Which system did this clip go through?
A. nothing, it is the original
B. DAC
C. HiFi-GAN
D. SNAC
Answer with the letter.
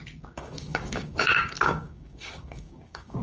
B